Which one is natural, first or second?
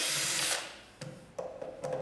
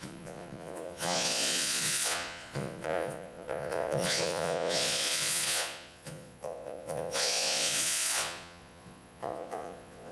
first